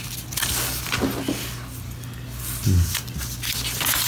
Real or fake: real